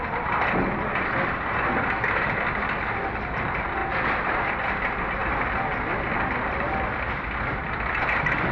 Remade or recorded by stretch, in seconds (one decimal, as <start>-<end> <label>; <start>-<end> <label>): 0.0-8.5 recorded